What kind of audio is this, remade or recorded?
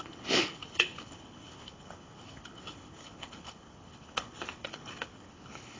remade